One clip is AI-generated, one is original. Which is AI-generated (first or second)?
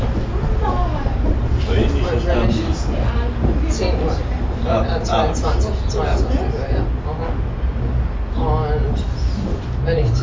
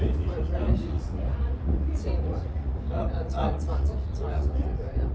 second